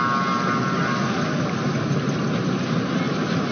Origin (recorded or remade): recorded